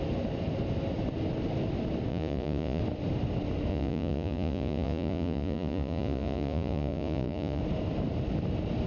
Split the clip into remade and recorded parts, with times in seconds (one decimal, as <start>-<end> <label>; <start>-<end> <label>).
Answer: 0.0-2.1 recorded; 2.1-2.8 remade; 2.8-3.7 recorded; 3.7-7.6 remade; 7.6-8.9 recorded